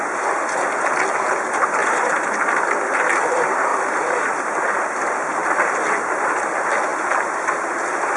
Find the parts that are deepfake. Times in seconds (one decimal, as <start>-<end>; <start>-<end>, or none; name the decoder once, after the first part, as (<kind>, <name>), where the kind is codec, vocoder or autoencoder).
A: 1.8-2.7 (vocoder, BigVGAN v2); 3.7-5.0; 5.4-6.3; 6.9-8.2